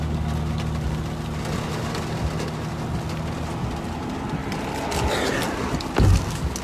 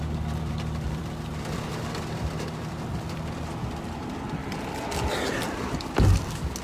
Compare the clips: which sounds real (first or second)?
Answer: first